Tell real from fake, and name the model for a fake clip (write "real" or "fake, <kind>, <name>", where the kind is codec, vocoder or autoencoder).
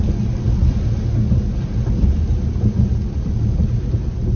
real